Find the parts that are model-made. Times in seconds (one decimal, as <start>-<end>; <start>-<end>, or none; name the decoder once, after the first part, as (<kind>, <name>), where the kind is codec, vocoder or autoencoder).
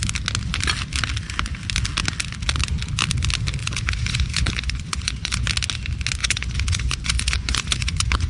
3.6-5.5 (vocoder, Vocos); 6.2-8.3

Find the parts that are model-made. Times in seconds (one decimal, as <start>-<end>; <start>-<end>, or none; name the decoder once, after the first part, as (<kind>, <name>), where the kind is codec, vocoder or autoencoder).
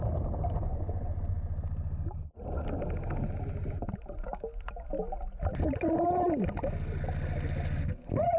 0.7-1.2 (vocoder, Vocos)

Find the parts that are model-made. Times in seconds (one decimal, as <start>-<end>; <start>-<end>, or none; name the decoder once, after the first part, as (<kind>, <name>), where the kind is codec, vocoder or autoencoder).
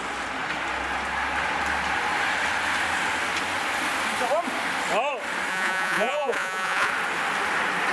5.5-6.9 (vocoder, Vocos)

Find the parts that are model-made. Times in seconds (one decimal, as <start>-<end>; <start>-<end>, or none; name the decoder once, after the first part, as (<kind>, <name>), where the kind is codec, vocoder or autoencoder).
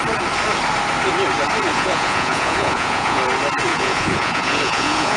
1.7-3.2 (vocoder, Vocos); 3.7-5.2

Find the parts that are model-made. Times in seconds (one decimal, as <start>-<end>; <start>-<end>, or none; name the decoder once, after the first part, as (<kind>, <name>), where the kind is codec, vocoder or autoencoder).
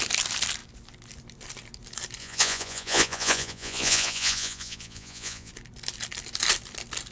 2.2-5.5 (vocoder, Vocos)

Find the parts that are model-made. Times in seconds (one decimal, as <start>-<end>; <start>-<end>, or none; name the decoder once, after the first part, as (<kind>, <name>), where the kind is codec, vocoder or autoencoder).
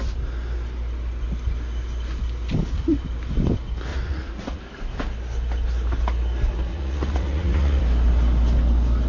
3.9-4.6 (vocoder, Vocos); 6.7-7.8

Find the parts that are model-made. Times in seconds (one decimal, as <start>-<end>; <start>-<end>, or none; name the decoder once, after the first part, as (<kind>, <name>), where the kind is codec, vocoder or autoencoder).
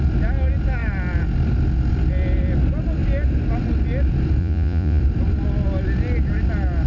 4.4-5.0 (vocoder, Vocos)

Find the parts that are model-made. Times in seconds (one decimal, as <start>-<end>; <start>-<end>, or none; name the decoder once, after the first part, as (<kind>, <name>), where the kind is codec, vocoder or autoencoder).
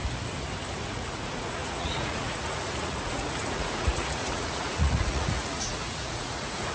0.7-6.7 (vocoder, Vocos)